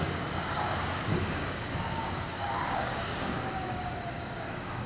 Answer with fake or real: fake